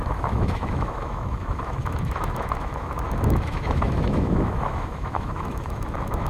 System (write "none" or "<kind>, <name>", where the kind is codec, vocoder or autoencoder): autoencoder, DAC-VAE